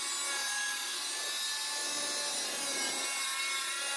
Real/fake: real